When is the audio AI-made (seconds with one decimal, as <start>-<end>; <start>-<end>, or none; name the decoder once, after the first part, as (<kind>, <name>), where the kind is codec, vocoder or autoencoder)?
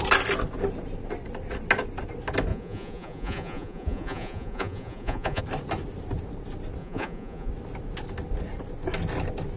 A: 2.5-5.4 (vocoder, Vocos); 6.8-7.5